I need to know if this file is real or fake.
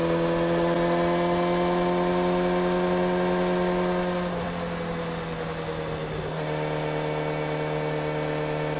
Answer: real